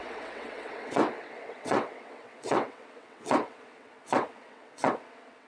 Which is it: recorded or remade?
remade